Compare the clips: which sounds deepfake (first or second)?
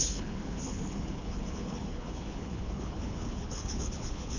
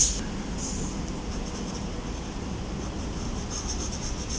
first